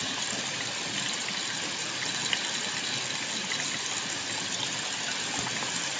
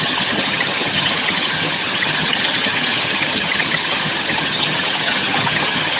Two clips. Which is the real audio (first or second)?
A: first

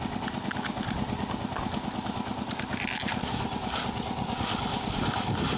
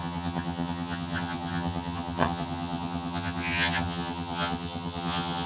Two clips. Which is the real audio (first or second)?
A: first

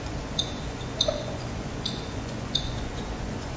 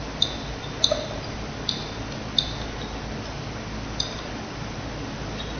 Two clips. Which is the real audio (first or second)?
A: second